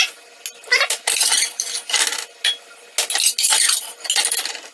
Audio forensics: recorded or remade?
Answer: recorded